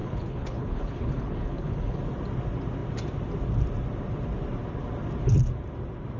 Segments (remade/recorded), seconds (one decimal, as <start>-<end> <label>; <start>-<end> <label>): 0.0-2.0 remade; 2.0-6.2 recorded